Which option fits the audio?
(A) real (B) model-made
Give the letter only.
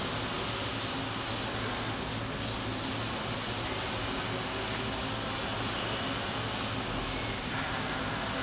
A